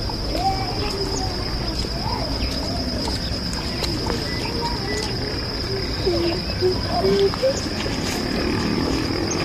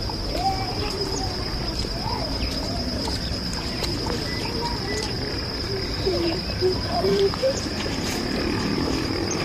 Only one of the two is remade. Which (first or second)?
second